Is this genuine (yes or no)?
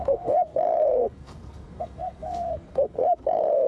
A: no